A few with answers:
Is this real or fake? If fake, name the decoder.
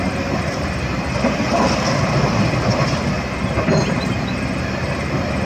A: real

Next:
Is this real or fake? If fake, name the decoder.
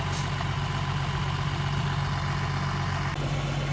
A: real